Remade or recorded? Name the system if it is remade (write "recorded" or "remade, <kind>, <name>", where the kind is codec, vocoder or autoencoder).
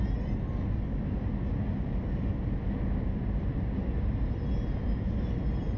recorded